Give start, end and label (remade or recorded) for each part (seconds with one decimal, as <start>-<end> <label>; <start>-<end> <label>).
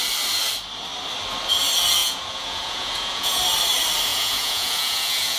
0.0-2.0 recorded; 2.0-3.4 remade; 3.4-4.1 recorded; 4.1-5.4 remade